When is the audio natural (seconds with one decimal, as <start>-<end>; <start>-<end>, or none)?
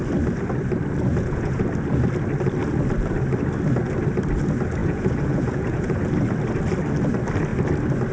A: 0.0-1.1; 1.6-4.8; 6.0-8.1